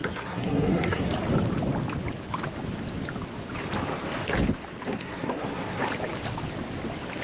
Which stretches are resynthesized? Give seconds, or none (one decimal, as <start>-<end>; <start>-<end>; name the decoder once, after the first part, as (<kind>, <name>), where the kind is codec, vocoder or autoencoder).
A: 0.0-1.1 (codec, SNAC); 4.9-5.8